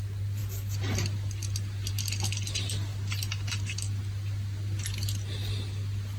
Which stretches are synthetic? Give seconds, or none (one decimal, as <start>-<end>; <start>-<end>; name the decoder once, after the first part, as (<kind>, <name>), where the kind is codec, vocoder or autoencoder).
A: none